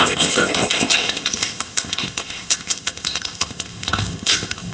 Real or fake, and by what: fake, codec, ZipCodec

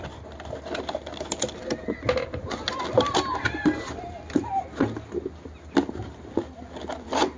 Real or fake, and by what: real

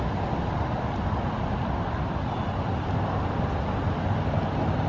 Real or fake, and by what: real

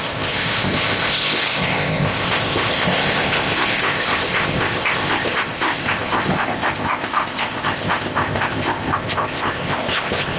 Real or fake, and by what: fake, codec, ZipCodec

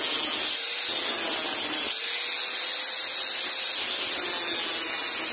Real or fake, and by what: real